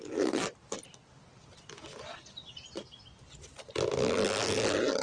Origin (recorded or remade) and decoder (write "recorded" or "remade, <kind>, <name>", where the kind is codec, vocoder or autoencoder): recorded